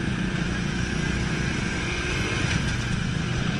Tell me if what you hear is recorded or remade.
remade